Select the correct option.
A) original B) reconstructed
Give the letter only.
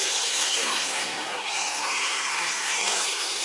B